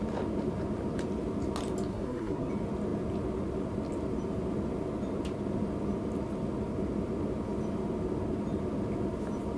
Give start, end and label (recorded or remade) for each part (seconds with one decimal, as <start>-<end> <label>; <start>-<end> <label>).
0.0-1.9 recorded; 1.9-2.5 remade; 2.5-9.6 recorded